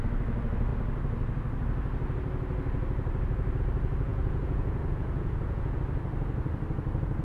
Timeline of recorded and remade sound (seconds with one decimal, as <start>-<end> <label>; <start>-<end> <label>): 0.0-4.1 recorded; 4.1-5.8 remade; 5.8-7.2 recorded

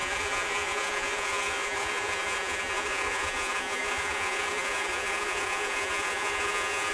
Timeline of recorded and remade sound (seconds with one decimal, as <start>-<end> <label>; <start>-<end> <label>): 0.0-6.9 remade

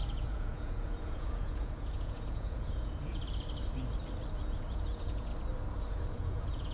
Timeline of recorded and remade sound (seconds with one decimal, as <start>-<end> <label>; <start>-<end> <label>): 0.0-3.2 remade; 3.2-4.4 recorded; 4.4-5.3 remade; 5.3-5.9 recorded; 5.9-6.7 remade

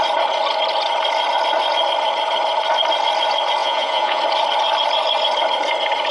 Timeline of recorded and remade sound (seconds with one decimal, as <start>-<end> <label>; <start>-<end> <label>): 0.0-3.6 recorded; 3.6-4.2 remade; 4.2-6.1 recorded

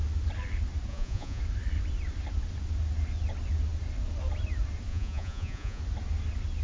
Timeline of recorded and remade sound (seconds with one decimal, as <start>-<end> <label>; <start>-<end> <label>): 0.0-0.9 recorded; 0.9-1.4 remade; 1.4-4.9 recorded; 4.9-5.8 remade; 5.8-6.6 recorded

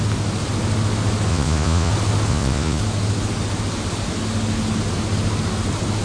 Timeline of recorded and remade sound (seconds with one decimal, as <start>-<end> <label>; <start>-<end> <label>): 0.0-1.3 recorded; 1.3-1.9 remade; 1.9-2.3 recorded; 2.3-2.8 remade; 2.8-6.0 recorded